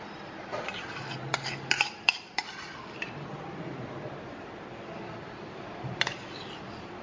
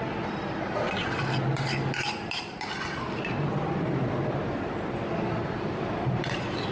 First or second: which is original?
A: second